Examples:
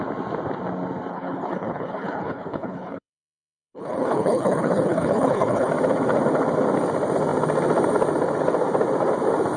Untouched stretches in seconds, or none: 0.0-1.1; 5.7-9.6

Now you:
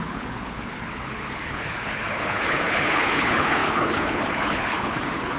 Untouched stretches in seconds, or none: none

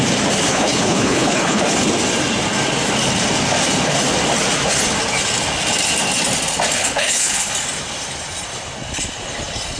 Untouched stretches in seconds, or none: 0.0-0.5; 1.6-6.8; 7.5-9.8

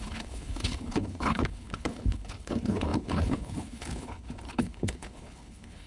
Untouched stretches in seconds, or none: none

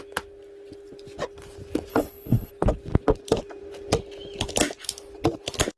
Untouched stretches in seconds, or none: 0.0-1.9; 2.5-5.8